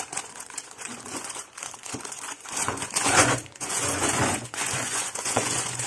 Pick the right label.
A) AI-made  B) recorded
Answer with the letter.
A